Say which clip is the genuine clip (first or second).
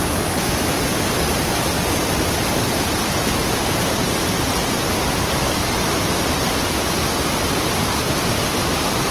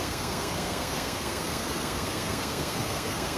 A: first